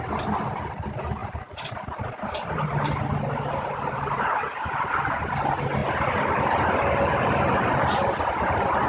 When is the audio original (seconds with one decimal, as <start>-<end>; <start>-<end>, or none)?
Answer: 0.0-1.2; 5.2-5.8; 6.4-8.9